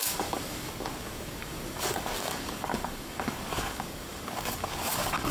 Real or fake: fake